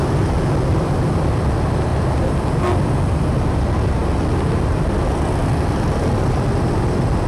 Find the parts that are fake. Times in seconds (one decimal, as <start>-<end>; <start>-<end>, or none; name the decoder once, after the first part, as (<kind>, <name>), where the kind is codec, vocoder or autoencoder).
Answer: none